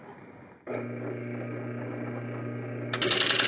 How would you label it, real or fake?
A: real